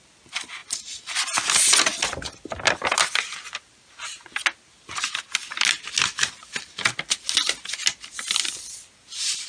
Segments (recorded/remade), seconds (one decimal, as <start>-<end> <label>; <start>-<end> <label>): 0.0-9.5 recorded